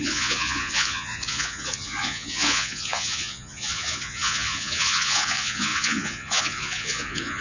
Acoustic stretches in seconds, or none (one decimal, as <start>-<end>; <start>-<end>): none